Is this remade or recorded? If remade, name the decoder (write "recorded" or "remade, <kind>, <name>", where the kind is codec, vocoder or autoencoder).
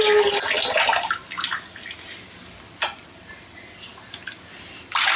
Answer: recorded